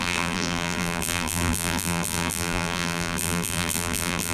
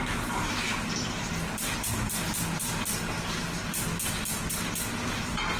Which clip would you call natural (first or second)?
second